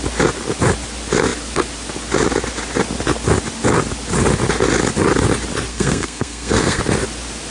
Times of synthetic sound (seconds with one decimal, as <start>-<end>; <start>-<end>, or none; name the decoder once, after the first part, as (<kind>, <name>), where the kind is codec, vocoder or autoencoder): 5.7-6.8 (codec, SNAC)